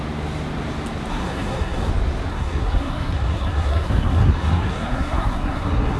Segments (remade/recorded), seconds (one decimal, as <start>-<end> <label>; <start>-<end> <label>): 0.0-1.1 recorded; 1.1-1.9 remade; 1.9-2.3 recorded; 2.3-6.0 remade